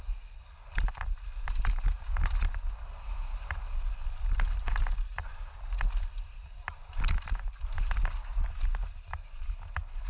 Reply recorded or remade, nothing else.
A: recorded